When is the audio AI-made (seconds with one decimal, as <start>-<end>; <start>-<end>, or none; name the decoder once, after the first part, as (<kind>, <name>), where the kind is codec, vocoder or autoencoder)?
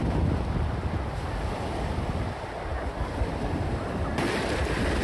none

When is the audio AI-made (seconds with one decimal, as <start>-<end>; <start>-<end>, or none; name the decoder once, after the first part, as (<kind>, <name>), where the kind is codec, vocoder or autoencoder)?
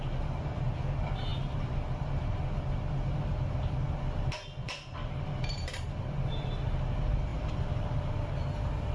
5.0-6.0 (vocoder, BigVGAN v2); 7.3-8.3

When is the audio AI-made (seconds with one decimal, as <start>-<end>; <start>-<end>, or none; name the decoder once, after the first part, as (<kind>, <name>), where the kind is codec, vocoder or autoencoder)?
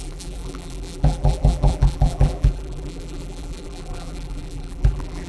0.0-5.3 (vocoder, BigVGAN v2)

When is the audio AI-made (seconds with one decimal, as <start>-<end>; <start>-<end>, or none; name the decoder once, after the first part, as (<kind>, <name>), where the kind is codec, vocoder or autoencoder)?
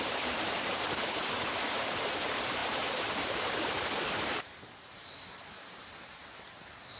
0.0-7.0 (vocoder, BigVGAN v2)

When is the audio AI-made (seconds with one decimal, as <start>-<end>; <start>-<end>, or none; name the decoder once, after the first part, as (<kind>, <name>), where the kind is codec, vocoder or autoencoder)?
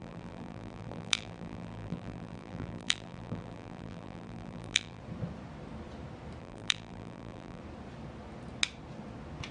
0.0-5.0 (vocoder, BigVGAN v2); 6.4-7.6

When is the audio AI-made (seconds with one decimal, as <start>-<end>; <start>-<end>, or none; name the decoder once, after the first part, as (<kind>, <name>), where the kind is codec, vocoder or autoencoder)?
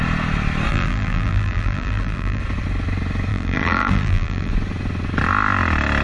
0.7-2.4 (vocoder, BigVGAN v2); 3.3-4.5